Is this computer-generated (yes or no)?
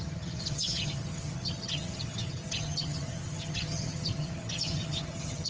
yes